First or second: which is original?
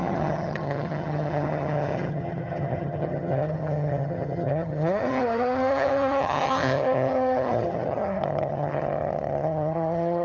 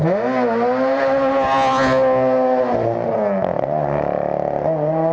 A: second